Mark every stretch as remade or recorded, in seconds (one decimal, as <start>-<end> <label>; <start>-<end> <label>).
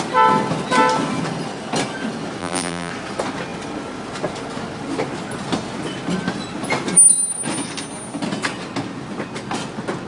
0.0-2.4 recorded; 2.4-2.9 remade; 2.9-10.1 recorded